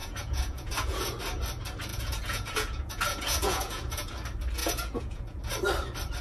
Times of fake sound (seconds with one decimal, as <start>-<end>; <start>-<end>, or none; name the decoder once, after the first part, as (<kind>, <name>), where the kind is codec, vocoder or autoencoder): 0.0-1.2 (vocoder, Vocos); 1.9-4.1; 4.6-5.4